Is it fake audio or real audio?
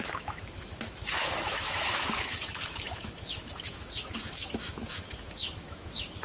fake